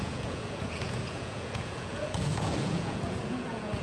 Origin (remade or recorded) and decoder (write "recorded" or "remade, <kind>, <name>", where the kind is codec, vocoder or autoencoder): remade, vocoder, Vocos